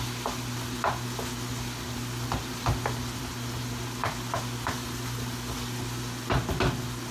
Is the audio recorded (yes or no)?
yes